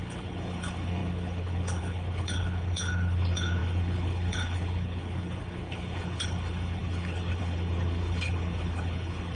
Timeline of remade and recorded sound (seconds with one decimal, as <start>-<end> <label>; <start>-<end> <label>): 0.0-9.4 remade